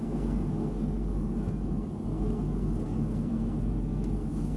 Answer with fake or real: fake